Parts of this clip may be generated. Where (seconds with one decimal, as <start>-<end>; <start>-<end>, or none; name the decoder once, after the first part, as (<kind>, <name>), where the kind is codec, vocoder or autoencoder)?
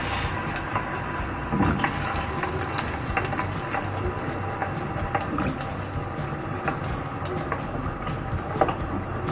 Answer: none